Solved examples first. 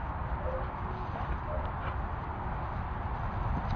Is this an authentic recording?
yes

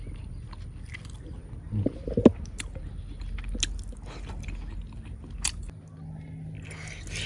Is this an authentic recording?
yes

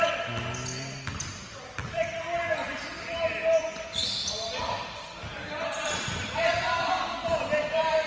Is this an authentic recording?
yes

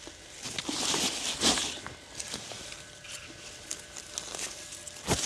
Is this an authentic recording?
yes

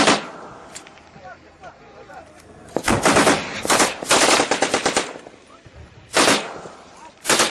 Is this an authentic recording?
yes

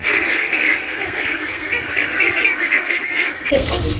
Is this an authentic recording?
no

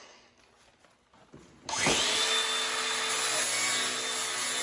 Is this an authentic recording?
yes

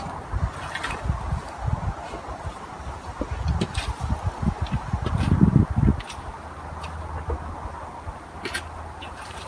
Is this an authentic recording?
yes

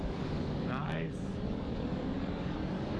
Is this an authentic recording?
no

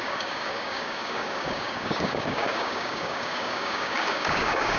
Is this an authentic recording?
no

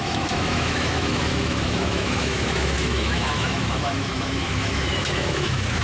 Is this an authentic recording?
no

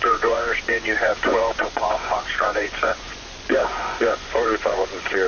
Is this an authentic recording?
no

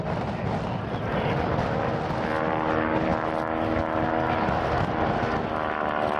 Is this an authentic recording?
yes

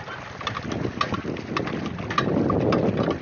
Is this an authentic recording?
yes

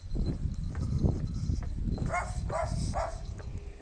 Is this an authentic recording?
yes